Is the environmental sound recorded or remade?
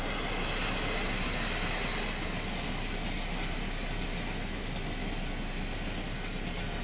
recorded